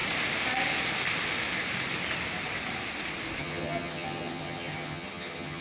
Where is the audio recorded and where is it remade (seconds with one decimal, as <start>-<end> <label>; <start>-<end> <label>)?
0.0-3.4 recorded; 3.4-5.6 remade